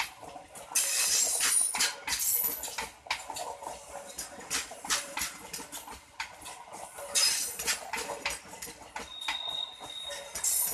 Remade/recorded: recorded